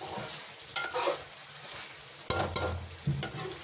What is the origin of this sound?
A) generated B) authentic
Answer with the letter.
B